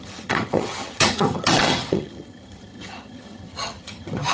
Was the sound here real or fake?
fake